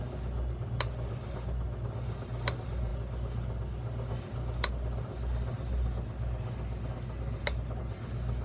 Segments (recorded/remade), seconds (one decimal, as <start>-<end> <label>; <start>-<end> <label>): 0.0-8.4 recorded